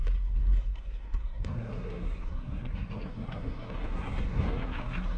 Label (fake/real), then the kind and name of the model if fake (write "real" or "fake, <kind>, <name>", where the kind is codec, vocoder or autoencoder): fake, codec, SNAC